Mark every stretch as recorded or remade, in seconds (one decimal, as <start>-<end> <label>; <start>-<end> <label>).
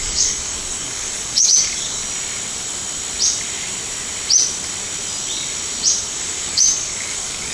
0.0-2.0 remade; 2.0-6.0 recorded; 6.0-7.5 remade